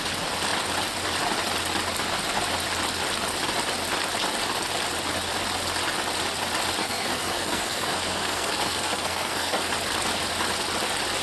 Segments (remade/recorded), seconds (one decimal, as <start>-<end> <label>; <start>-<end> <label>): 0.0-6.8 recorded; 6.8-9.7 remade; 9.7-11.2 recorded